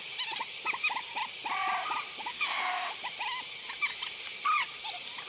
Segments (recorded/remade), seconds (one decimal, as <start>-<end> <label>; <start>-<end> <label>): 0.0-2.3 recorded; 2.3-2.9 remade; 2.9-5.3 recorded